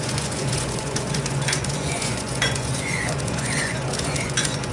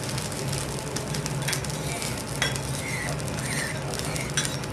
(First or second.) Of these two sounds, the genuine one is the second